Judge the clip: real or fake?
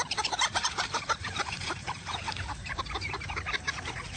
fake